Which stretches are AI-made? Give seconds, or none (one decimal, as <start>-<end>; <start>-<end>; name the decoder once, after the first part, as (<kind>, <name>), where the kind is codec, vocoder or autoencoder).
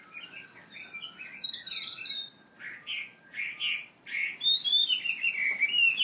none